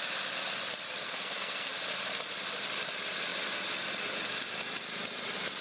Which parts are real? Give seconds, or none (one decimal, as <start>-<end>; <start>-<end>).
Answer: 0.0-1.0; 1.7-5.6